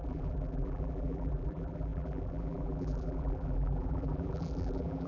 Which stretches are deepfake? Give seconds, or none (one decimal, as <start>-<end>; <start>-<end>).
0.0-5.1